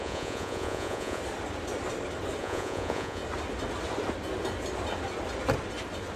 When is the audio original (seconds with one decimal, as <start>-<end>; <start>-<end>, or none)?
1.2-2.4; 3.2-6.2